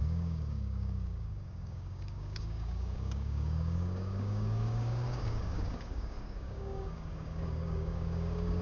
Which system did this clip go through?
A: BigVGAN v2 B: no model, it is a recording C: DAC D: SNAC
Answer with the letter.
C